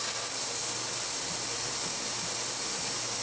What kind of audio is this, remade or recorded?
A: recorded